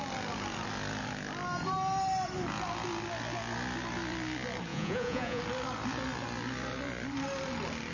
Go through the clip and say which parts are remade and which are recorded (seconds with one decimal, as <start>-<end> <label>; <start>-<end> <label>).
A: 0.0-4.7 recorded; 4.7-5.4 remade; 5.4-7.9 recorded

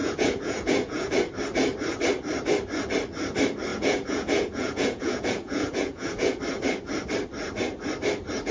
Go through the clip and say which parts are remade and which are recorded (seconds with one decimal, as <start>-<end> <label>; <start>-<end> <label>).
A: 0.0-1.1 remade; 1.1-3.7 recorded; 3.7-6.4 remade; 6.4-8.5 recorded